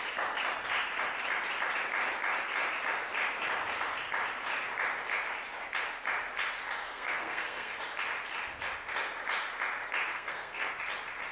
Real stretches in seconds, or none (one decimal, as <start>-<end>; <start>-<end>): 0.0-6.8; 7.7-10.1; 10.7-11.3